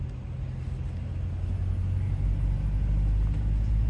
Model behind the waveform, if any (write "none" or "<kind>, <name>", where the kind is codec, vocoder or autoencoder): none